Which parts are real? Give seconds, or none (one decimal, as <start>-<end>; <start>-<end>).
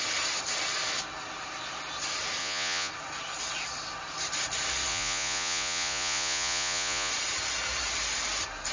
0.0-2.4; 2.9-4.9; 7.1-8.7